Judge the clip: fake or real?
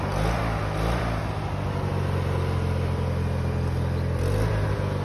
real